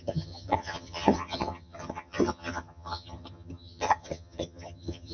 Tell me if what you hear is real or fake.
fake